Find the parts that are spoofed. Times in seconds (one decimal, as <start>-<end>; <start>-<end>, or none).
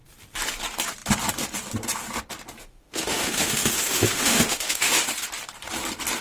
2.6-5.0